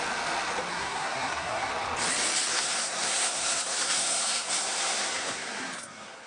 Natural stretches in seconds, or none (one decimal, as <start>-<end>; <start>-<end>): 0.0-0.7; 1.7-2.5